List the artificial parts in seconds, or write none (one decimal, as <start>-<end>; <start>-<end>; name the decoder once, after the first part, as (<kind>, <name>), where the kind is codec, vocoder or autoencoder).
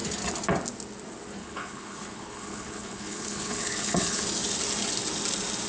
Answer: 1.4-4.2 (codec, HILCodec)